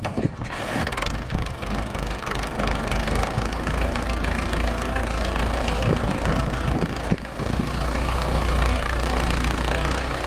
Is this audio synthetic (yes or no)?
yes